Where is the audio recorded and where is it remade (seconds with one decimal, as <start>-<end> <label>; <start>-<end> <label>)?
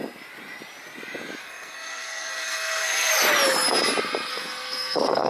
0.0-1.4 recorded; 1.4-3.1 remade; 3.1-4.3 recorded; 4.3-5.3 remade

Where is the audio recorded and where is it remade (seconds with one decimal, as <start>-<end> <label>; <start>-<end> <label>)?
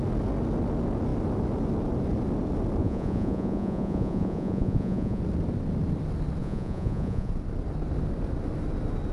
0.0-2.8 recorded; 2.8-5.2 remade; 5.2-6.4 recorded; 6.4-7.3 remade; 7.3-9.1 recorded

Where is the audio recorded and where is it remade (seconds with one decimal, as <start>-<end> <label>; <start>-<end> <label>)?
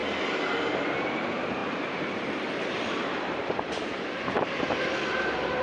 0.0-1.2 recorded; 1.2-5.6 remade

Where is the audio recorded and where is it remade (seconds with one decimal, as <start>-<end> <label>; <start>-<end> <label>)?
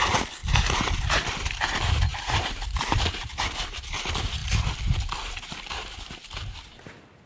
0.0-0.4 recorded; 0.4-1.3 remade; 1.3-2.1 recorded; 2.1-3.5 remade; 3.5-7.3 recorded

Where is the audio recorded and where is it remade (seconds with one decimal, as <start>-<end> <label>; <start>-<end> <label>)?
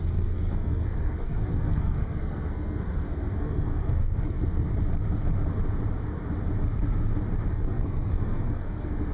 0.0-4.7 remade; 4.7-7.5 recorded; 7.5-9.1 remade